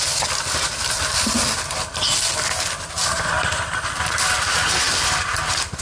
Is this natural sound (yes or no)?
yes